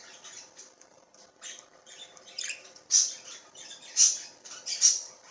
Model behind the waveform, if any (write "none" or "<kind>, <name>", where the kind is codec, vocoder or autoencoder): vocoder, BigVGAN v2